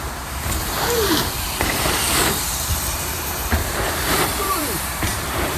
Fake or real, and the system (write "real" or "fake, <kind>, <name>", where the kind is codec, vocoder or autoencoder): fake, vocoder, BigVGAN v2